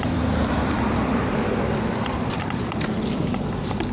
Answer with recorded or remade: remade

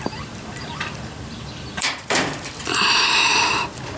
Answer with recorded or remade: remade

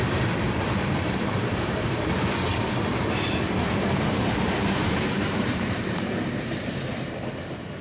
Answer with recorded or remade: remade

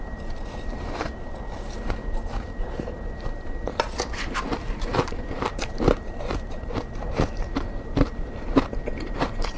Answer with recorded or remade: remade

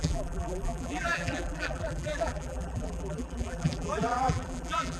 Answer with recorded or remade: remade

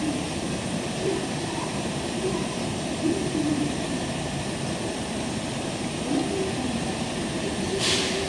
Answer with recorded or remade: remade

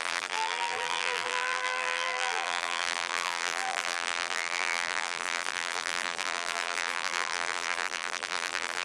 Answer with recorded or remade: remade